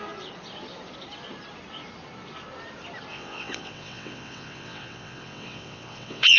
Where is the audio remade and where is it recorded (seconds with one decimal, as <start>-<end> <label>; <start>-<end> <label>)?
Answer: 0.0-3.1 recorded; 3.1-6.4 remade